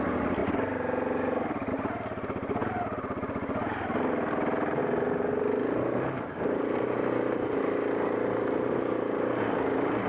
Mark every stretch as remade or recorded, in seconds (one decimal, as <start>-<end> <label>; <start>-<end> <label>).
0.0-10.1 recorded